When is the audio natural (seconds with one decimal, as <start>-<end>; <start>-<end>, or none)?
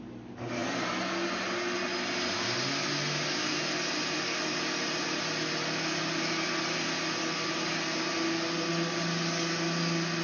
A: 0.0-10.2